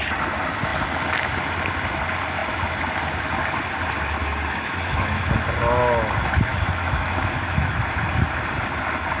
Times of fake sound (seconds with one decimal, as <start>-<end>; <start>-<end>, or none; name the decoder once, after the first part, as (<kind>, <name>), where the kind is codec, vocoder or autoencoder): 4.2-5.3 (autoencoder, DAC-VAE); 6.5-7.7